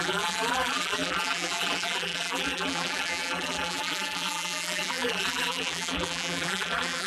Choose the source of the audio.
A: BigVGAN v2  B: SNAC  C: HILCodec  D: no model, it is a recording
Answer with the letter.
A